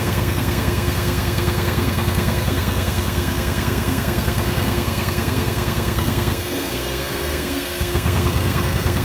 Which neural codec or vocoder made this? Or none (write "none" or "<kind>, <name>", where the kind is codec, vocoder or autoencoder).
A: codec, SNAC